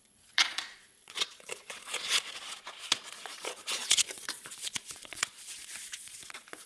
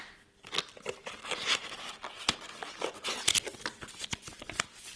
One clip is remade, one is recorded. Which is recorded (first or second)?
second